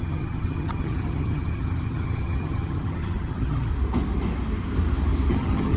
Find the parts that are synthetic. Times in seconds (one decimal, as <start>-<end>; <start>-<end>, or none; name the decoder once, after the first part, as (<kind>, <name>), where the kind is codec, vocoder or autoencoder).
0.0-3.7 (vocoder, HiFi-GAN); 5.3-5.8